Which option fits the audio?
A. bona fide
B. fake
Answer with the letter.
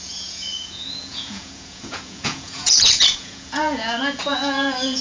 B